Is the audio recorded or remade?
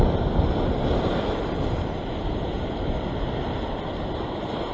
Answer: recorded